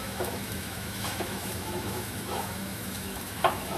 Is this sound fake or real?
fake